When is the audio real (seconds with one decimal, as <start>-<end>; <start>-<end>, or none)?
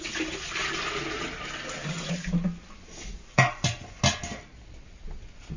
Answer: 0.0-3.3; 4.0-5.6